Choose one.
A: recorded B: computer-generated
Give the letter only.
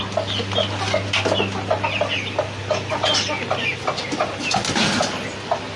A